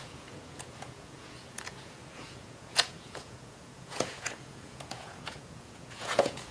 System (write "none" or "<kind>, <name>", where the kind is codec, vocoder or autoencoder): vocoder, Vocos